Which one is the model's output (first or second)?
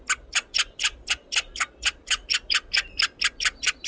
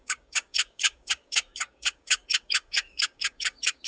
second